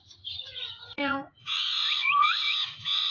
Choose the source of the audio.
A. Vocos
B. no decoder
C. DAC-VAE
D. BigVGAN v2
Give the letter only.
A